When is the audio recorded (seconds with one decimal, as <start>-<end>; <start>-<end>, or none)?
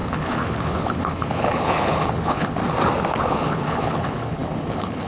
2.6-3.2